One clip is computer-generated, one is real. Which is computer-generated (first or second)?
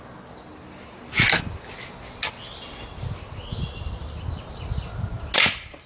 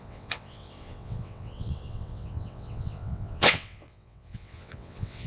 second